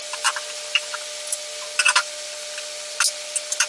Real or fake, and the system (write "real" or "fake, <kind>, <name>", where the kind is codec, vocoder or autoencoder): real